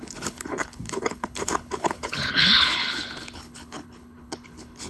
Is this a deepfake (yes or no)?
yes